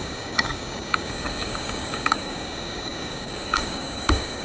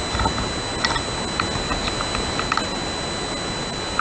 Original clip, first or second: second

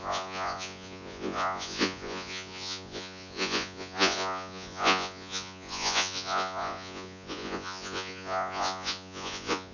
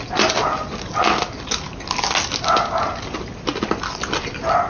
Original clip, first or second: second